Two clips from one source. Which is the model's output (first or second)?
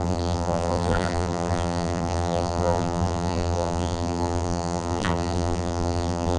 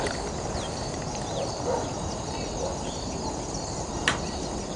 first